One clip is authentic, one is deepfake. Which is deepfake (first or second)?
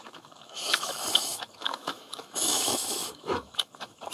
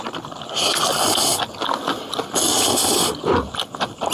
first